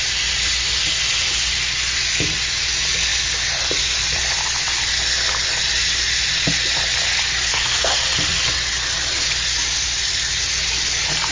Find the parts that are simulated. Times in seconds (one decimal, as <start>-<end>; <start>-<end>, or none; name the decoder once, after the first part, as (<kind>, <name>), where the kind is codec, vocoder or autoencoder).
7.5-8.0 (codec, SNAC)